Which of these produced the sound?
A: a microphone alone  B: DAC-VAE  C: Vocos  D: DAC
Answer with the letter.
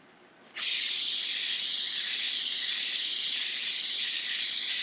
A